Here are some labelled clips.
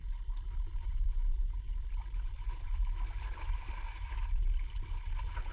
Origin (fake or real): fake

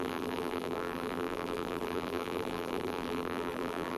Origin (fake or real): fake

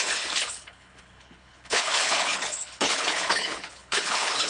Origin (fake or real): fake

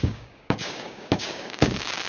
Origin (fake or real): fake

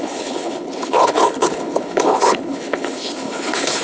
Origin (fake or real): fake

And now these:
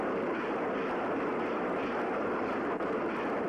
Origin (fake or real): real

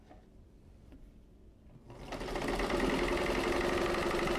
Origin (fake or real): real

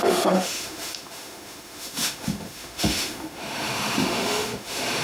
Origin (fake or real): fake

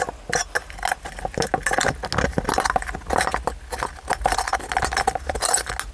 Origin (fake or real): real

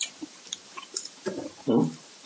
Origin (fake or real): fake